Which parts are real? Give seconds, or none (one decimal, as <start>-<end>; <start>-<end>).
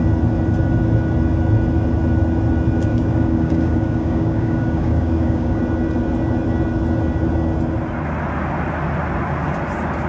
0.0-2.9; 5.6-10.1